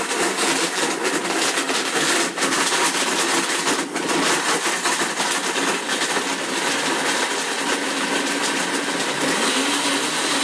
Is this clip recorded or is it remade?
recorded